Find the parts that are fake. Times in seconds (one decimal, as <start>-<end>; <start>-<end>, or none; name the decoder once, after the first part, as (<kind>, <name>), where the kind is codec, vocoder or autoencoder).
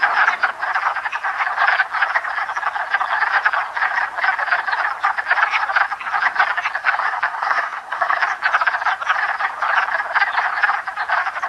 6.8-8.2 (codec, SNAC)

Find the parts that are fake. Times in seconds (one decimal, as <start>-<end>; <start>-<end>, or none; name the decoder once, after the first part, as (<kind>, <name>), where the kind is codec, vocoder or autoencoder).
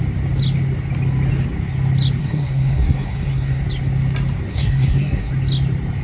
2.2-3.6 (codec, SNAC); 4.5-5.3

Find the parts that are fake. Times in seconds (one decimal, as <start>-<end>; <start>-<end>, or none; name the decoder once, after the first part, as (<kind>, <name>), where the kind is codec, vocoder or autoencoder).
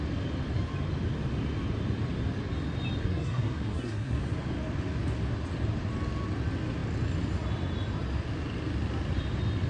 3.0-4.2 (codec, SNAC)